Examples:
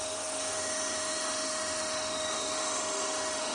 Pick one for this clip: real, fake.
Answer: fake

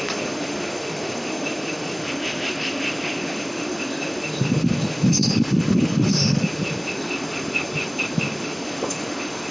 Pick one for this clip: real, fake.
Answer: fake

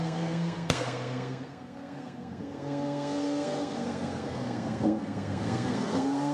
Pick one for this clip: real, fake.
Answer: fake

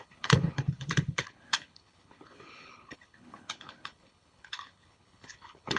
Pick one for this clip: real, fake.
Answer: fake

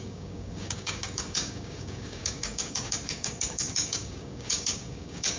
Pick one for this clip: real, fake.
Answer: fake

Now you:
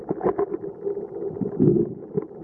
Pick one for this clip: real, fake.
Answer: real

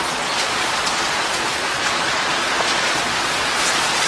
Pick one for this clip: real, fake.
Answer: fake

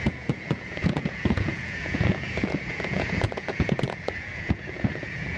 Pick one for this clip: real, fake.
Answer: fake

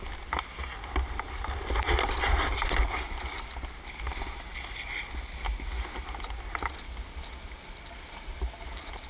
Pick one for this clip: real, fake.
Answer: real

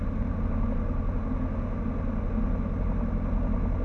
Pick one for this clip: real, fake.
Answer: real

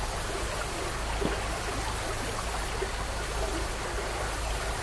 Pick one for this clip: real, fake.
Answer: real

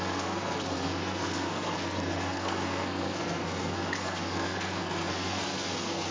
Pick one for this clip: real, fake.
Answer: fake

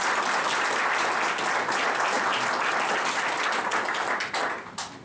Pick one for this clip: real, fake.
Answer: real